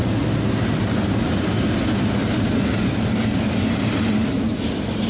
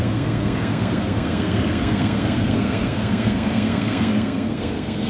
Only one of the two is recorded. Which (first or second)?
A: first